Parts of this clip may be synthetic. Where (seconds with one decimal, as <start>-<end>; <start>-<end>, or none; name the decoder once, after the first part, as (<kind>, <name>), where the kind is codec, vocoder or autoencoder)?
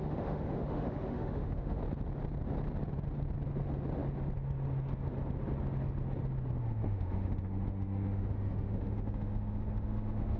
0.0-1.8 (autoencoder, DAC-VAE); 6.6-10.4